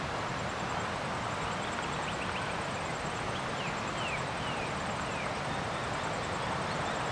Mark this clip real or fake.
real